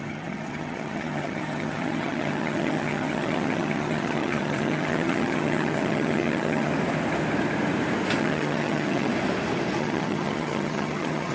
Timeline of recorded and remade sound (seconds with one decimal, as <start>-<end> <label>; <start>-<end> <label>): 0.0-6.7 remade; 6.7-8.2 recorded; 8.2-9.1 remade; 9.1-9.8 recorded; 9.8-11.3 remade